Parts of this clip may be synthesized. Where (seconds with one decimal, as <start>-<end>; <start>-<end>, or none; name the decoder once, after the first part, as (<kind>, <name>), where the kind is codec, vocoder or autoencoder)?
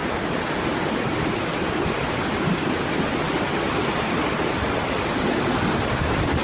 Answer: none